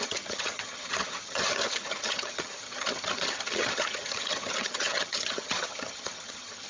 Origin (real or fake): fake